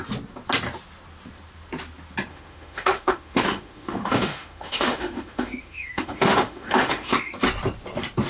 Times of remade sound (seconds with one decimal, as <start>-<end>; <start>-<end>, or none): 2.3-7.3